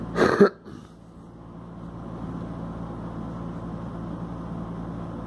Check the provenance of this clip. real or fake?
real